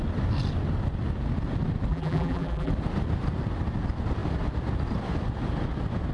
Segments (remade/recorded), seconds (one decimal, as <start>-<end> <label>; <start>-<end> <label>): 0.0-1.9 recorded; 1.9-2.7 remade; 2.7-6.1 recorded

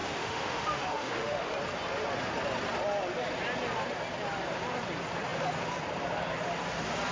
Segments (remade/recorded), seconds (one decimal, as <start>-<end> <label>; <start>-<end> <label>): 0.0-1.5 remade; 1.5-7.1 recorded

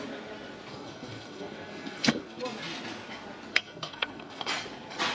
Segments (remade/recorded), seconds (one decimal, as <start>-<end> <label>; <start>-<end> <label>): 0.0-0.7 recorded; 0.7-2.4 remade; 2.4-3.5 recorded; 3.5-4.5 remade; 4.5-5.1 recorded

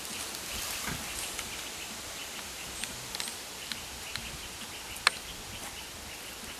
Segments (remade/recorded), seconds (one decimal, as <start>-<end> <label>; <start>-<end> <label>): 0.0-6.6 recorded

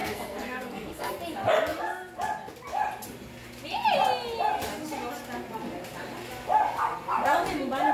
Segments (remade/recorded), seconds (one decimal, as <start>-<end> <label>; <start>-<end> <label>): 0.0-1.1 remade; 1.1-7.9 recorded